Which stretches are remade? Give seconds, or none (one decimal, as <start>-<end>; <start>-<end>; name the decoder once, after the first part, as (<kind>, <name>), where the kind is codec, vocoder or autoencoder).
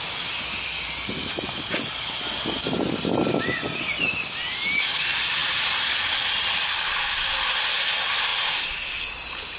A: 5.4-6.0 (vocoder, BigVGAN v2)